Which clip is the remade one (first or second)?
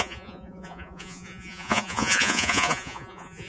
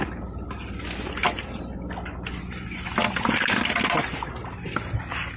first